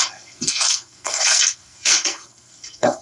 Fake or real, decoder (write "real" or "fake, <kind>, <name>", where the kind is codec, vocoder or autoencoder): fake, codec, SNAC